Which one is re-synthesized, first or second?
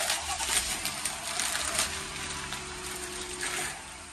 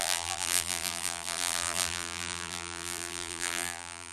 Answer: second